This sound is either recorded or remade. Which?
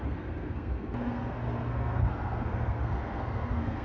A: remade